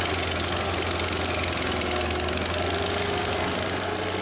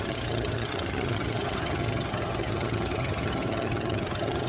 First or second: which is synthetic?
second